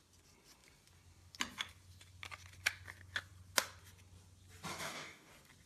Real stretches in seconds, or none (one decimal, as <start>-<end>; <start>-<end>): 0.0-4.7; 5.3-5.7